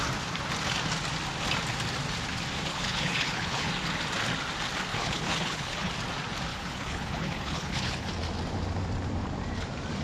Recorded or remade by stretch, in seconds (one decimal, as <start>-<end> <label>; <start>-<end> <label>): 0.0-2.7 recorded; 2.7-3.7 remade; 3.7-4.9 recorded; 4.9-5.9 remade; 5.9-6.5 recorded; 6.5-8.1 remade; 8.1-10.0 recorded